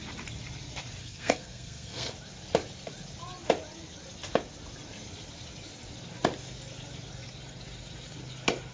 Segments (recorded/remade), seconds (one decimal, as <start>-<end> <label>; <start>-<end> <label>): 0.0-1.0 recorded; 1.0-2.1 remade; 2.1-8.7 recorded